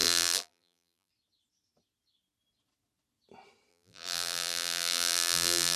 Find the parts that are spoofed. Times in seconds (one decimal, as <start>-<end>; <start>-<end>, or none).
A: 0.0-1.1; 3.7-5.8